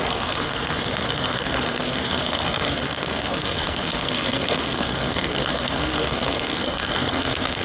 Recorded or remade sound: remade